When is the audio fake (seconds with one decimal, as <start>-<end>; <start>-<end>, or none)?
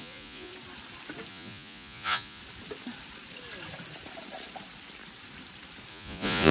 0.0-0.5; 1.3-2.4; 5.9-6.5